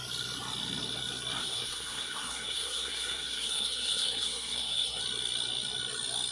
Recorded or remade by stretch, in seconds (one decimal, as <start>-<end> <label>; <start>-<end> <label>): 0.0-1.4 recorded; 1.4-5.0 remade; 5.0-6.3 recorded